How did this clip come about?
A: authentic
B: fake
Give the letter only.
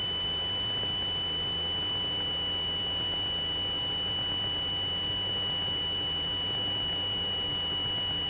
A